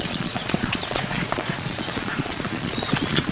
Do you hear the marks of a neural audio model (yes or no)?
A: yes